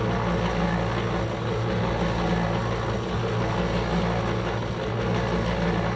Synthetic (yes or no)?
no